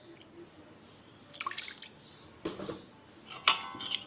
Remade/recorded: recorded